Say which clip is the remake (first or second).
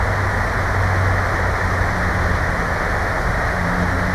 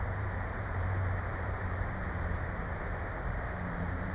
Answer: second